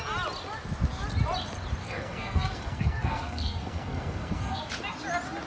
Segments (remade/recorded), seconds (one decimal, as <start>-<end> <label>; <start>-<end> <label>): 0.0-1.8 recorded; 1.8-4.6 remade; 4.6-5.5 recorded